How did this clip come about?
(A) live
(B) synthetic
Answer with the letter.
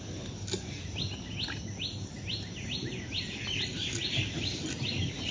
A